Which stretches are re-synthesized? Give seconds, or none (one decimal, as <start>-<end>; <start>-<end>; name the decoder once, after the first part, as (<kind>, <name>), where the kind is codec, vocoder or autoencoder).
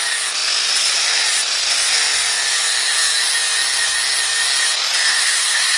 5.1-5.8 (codec, SNAC)